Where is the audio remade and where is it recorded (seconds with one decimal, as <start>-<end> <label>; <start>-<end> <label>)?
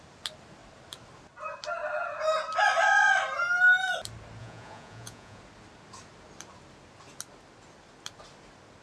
0.0-4.4 recorded; 4.4-5.4 remade; 5.4-8.8 recorded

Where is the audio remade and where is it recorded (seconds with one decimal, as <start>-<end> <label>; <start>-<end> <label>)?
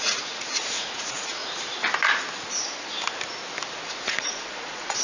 0.0-1.4 remade; 1.4-3.7 recorded; 3.7-5.0 remade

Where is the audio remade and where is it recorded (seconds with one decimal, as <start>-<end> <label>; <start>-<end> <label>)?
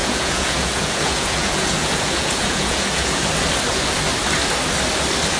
0.0-3.2 remade; 3.2-5.4 recorded